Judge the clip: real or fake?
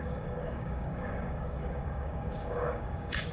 fake